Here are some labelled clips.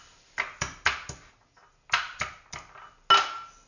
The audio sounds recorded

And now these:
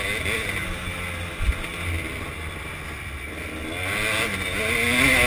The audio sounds recorded